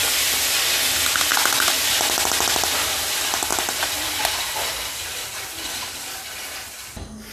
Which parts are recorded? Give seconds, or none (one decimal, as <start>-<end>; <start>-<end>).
0.0-1.3; 1.9-3.5